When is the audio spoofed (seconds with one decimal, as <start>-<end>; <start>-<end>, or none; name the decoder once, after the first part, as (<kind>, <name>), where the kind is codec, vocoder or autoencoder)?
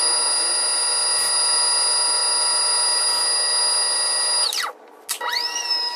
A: none